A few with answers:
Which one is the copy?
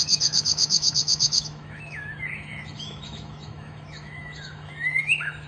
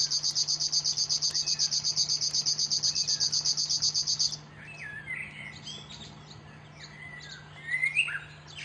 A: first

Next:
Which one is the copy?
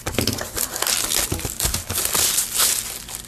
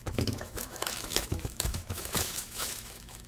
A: second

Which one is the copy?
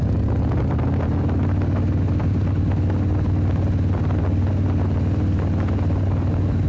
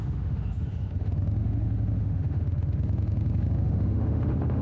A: second